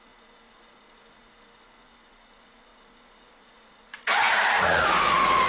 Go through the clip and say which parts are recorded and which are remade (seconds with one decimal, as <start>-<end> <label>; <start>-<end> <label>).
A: 0.0-5.5 remade